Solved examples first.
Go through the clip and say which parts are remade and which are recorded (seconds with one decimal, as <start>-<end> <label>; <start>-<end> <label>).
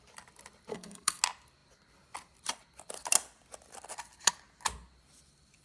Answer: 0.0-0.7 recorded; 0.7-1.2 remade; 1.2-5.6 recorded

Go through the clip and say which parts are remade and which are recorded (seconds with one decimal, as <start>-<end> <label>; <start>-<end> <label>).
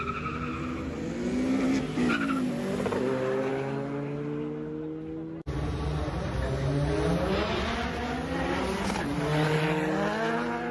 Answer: 0.0-10.7 recorded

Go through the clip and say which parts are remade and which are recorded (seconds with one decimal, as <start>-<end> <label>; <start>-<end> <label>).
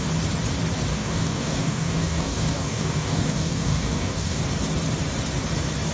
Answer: 0.0-0.9 recorded; 0.9-4.4 remade; 4.4-5.9 recorded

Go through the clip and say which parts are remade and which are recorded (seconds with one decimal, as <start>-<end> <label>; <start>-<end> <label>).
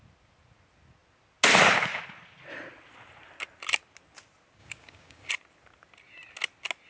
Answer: 0.0-4.6 recorded; 4.6-5.3 remade; 5.3-6.9 recorded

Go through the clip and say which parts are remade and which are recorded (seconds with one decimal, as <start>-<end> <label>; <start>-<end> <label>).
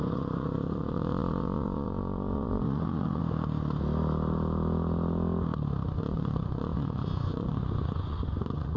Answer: 0.0-3.2 remade; 3.2-6.0 recorded; 6.0-8.8 remade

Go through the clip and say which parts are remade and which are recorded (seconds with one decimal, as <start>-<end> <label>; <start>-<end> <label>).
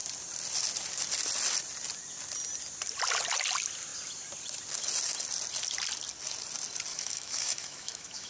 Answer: 0.0-6.9 recorded; 6.9-8.3 remade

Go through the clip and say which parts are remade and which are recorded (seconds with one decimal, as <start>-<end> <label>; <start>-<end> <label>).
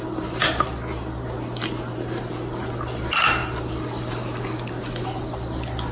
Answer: 0.0-5.9 recorded